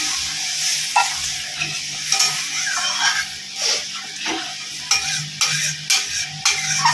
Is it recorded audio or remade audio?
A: recorded